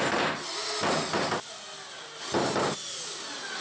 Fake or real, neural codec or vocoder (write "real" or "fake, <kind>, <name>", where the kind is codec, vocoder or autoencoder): real